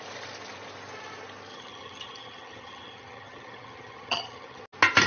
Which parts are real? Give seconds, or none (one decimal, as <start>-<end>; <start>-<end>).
0.0-1.5; 4.6-5.1